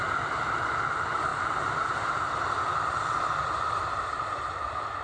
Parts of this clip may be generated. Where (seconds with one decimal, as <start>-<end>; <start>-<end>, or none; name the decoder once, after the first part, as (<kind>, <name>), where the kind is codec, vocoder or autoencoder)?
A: 1.3-2.2 (vocoder, BigVGAN v2)